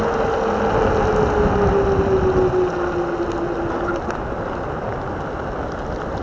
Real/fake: real